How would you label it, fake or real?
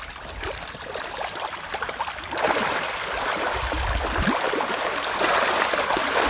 real